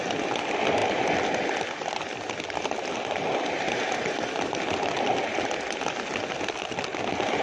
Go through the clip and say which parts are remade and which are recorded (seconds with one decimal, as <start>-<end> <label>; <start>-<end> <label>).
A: 0.0-7.4 recorded